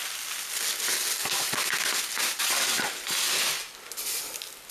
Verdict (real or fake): real